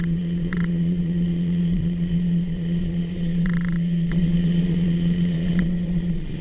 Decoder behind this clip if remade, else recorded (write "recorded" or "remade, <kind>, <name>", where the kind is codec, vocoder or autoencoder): remade, vocoder, Vocos